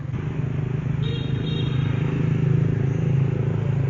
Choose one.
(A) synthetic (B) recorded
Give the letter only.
B